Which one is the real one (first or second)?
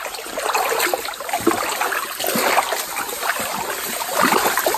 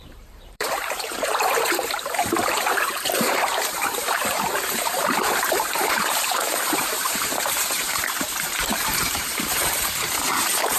first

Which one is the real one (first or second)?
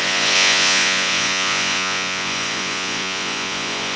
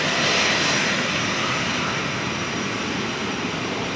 second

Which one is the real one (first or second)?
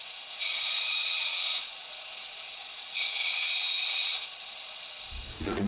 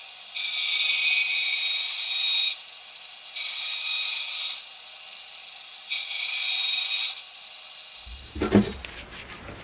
second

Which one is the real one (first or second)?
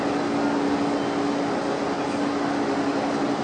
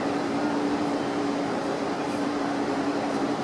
first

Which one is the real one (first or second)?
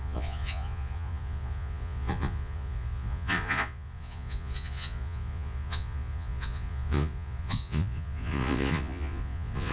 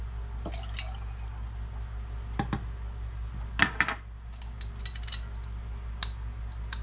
second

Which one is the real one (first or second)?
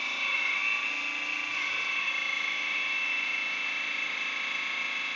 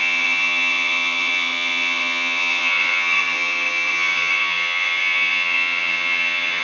first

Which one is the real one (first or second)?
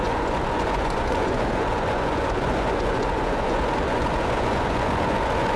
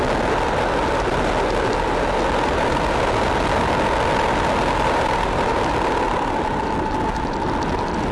second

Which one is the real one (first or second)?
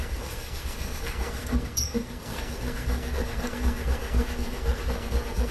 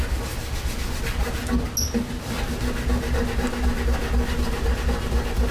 second